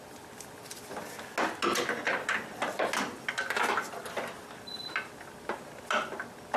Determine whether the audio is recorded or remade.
recorded